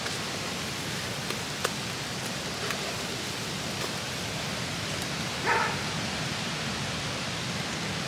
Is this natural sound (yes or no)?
yes